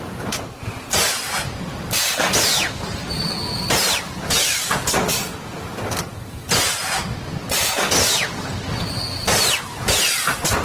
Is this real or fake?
real